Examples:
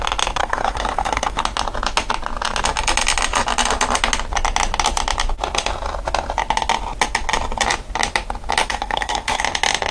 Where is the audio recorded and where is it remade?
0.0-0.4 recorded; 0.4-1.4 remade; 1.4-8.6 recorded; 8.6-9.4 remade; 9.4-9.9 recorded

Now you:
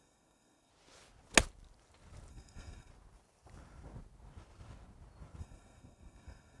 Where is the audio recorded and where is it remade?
0.0-0.7 remade; 0.7-2.3 recorded; 2.3-2.9 remade; 2.9-5.4 recorded; 5.4-6.6 remade

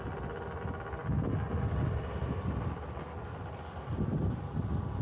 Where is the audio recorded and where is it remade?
0.0-5.0 recorded

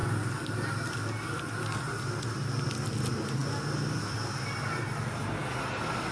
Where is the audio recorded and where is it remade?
0.0-6.1 recorded

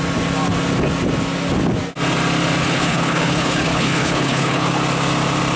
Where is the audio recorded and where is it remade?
0.0-2.6 recorded; 2.6-4.7 remade; 4.7-5.6 recorded

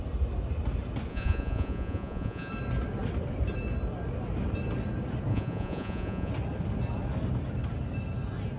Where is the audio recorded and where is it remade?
0.0-1.1 recorded; 1.1-2.5 remade; 2.5-5.3 recorded; 5.3-6.3 remade; 6.3-8.6 recorded